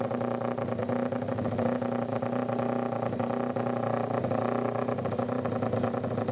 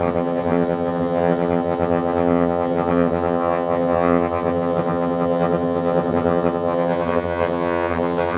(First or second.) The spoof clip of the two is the second